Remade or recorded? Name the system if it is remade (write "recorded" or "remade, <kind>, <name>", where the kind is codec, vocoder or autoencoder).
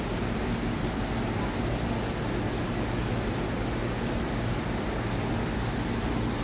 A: recorded